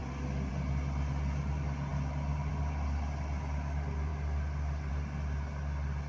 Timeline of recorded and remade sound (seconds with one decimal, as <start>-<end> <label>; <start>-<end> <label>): 0.0-6.1 recorded